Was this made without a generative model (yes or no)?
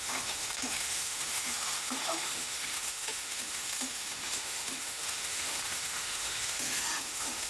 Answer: no